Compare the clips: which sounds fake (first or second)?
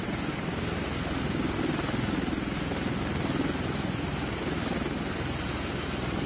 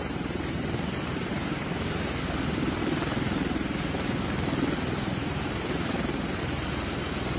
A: second